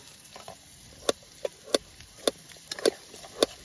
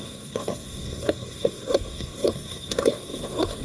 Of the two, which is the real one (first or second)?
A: first